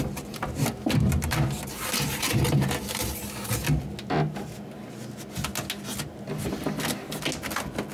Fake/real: real